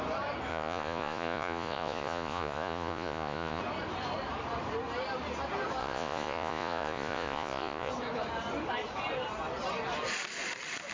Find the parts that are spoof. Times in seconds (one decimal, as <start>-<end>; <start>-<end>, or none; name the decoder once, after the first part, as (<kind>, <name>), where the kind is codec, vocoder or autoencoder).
0.5-3.6 (vocoder, Vocos); 5.8-7.9